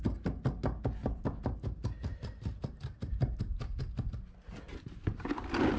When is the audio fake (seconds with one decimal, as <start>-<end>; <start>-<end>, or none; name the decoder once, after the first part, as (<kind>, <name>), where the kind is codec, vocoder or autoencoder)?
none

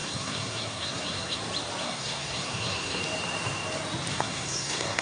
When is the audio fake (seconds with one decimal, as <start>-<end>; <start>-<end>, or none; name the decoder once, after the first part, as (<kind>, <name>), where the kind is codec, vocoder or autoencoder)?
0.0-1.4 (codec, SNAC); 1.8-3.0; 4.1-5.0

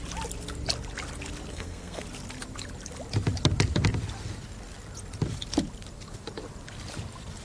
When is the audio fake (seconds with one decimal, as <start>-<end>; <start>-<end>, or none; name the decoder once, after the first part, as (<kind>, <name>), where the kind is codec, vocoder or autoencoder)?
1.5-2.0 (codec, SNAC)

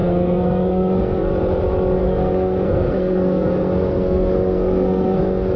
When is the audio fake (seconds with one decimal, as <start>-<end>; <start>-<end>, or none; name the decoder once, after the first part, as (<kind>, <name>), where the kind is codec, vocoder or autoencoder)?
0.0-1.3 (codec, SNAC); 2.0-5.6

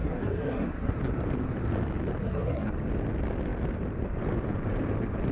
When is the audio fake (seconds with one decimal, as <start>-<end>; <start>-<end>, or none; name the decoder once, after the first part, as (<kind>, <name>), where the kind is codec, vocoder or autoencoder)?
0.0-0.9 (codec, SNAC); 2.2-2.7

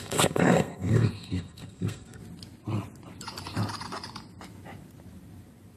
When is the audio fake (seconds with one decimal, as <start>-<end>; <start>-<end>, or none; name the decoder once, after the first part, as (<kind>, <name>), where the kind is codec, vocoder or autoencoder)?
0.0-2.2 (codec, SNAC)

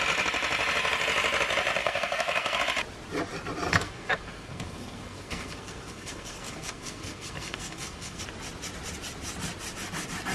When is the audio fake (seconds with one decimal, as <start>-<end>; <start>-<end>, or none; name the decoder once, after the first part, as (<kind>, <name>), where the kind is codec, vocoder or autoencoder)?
1.8-2.6 (codec, SNAC); 3.7-8.2

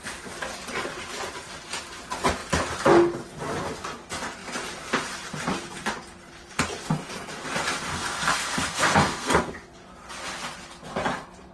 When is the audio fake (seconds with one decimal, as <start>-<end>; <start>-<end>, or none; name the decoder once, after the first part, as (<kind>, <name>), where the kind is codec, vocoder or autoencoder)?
7.9-9.5 (codec, SNAC)